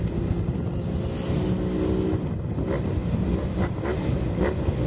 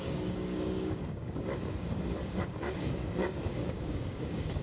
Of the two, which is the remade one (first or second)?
second